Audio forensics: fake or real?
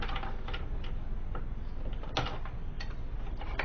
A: real